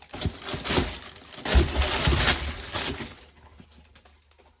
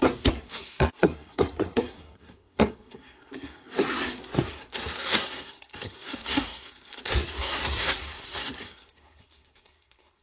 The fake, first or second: second